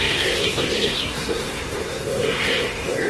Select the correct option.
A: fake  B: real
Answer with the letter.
A